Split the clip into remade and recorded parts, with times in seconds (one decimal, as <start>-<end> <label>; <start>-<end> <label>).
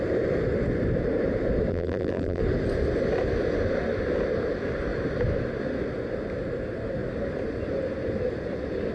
0.0-1.7 recorded; 1.7-2.4 remade; 2.4-8.9 recorded